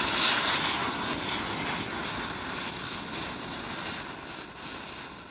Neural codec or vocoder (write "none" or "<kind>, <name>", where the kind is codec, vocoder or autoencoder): none